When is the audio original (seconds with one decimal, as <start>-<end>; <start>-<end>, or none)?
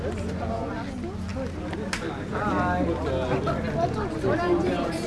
0.0-5.1